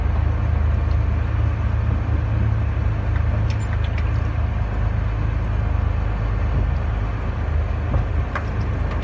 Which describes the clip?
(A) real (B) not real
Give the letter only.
A